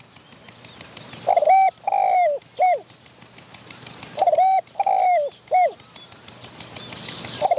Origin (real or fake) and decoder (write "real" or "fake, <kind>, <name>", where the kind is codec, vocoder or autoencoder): real